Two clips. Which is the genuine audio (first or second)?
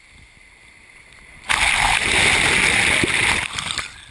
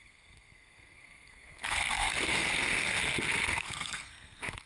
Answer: first